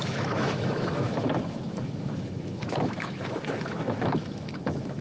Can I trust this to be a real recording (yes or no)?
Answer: no